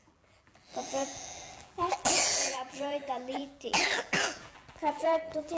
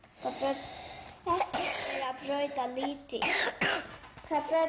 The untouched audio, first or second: second